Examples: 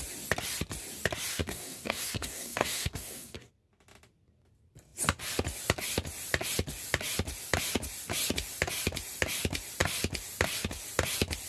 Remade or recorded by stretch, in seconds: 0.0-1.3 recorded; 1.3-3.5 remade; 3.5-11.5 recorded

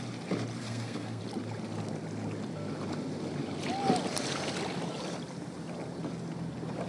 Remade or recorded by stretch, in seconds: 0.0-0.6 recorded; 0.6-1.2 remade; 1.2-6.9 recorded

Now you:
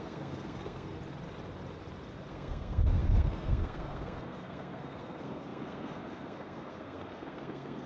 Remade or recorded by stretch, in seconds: 0.0-0.9 remade; 0.9-2.3 recorded; 2.3-7.9 remade